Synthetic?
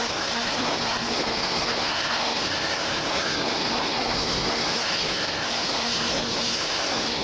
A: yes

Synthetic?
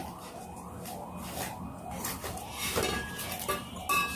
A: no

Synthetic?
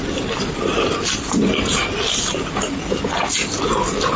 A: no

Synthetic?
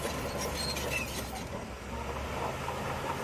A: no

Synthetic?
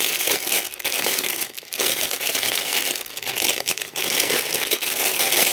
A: yes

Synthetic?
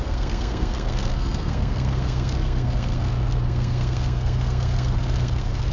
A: yes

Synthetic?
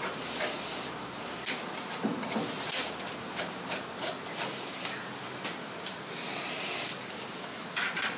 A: no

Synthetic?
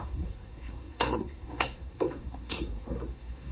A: yes